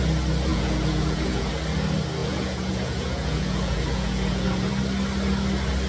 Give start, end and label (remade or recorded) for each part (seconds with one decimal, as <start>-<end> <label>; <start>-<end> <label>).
0.0-0.5 recorded; 0.5-1.5 remade; 1.5-2.2 recorded; 2.2-4.7 remade; 4.7-5.9 recorded